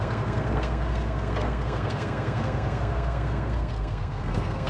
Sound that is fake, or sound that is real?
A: fake